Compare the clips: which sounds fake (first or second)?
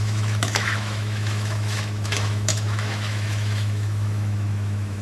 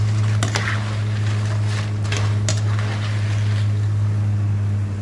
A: first